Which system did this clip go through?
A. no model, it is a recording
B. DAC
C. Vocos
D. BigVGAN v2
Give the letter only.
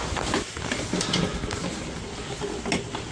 A